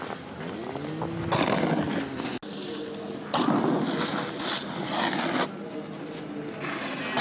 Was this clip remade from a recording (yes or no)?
no